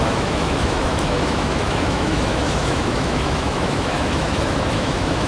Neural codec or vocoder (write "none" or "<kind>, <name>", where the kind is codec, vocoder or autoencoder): autoencoder, DAC-VAE